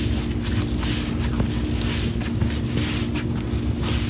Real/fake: real